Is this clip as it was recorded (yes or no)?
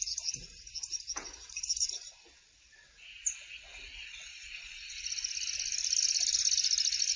yes